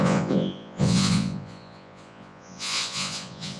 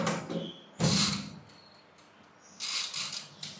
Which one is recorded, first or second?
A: second